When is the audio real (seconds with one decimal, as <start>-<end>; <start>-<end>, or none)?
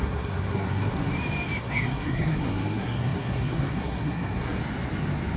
1.1-1.6; 4.6-5.4